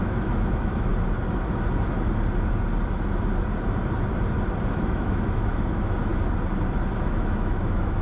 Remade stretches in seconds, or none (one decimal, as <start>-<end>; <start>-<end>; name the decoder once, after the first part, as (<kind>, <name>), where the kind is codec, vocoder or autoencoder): 0.0-0.9 (autoencoder, DAC-VAE); 4.7-6.1; 6.9-8.0